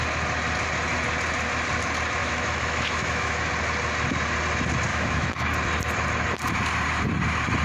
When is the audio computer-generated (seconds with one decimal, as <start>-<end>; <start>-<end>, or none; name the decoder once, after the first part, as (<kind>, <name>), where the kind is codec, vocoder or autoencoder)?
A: 2.2-3.5 (autoencoder, DAC-VAE); 4.9-5.5

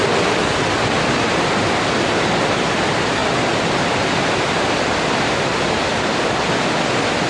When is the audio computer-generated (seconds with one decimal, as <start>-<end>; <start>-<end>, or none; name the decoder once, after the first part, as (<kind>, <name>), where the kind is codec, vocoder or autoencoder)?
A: 1.8-7.3 (vocoder, BigVGAN v2)

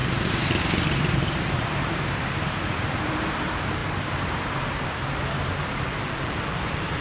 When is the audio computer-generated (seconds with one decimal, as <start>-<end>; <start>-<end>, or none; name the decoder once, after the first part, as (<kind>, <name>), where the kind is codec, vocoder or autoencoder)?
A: 0.0-3.8 (vocoder, BigVGAN v2); 5.4-7.0

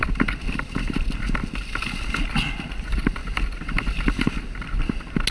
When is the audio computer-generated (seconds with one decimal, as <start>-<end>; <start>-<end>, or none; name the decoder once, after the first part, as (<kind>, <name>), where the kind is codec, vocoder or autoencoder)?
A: 2.7-3.2 (vocoder, BigVGAN v2)

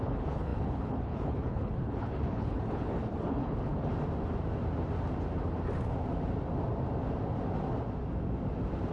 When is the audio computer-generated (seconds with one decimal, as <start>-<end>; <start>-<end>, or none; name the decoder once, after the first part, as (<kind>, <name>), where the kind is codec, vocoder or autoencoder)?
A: 0.0-3.9 (codec, HILCodec)